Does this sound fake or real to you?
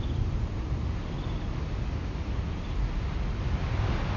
real